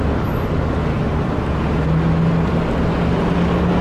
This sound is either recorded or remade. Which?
recorded